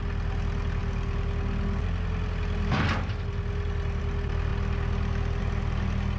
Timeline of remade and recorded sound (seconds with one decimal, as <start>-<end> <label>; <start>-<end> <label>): 0.0-6.2 recorded